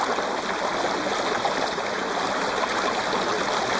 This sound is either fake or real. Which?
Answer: real